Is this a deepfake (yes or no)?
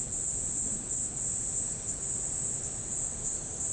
no